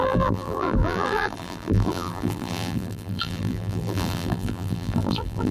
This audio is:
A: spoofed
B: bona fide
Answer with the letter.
A